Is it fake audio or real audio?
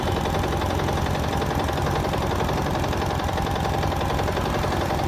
real